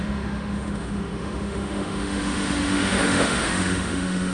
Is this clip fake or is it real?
fake